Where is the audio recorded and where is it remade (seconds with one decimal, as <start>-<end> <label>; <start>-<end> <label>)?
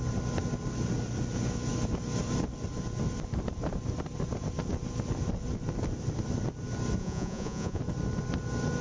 0.0-7.0 recorded; 7.0-7.8 remade; 7.8-8.8 recorded